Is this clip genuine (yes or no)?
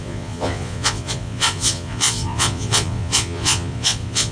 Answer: no